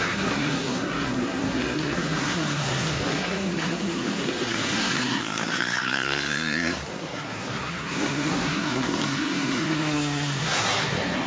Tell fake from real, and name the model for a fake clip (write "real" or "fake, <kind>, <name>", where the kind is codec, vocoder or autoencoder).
fake, codec, SNAC